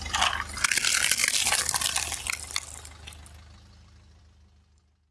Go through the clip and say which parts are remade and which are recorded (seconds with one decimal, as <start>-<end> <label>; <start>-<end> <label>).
0.0-5.1 recorded